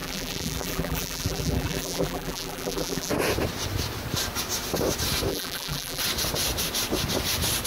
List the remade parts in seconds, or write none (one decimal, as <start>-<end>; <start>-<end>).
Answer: 0.0-3.1; 5.3-6.0